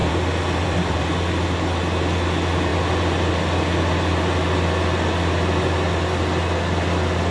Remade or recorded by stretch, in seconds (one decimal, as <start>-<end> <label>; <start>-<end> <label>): 0.0-1.3 remade; 1.3-7.3 recorded